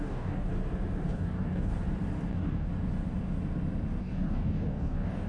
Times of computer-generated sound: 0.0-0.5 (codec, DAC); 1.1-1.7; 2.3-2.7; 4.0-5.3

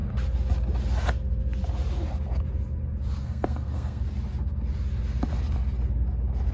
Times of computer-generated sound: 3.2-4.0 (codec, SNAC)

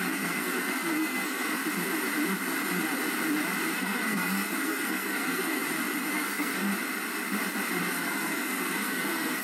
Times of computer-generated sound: 0.0-1.6 (codec, SNAC); 3.7-5.6; 6.1-6.7; 7.8-9.4

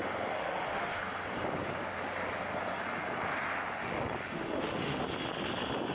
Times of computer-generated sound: 0.4-1.0 (autoencoder, DAC-VAE); 4.3-5.0

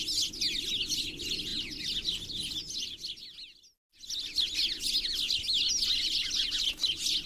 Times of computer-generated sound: none